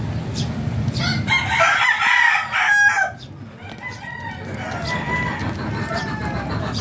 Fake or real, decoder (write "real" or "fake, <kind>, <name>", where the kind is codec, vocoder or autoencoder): real